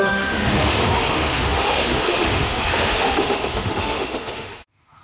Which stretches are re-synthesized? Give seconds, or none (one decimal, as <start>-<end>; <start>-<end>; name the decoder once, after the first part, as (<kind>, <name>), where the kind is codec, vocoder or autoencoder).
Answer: 0.0-5.0 (autoencoder, DAC-VAE)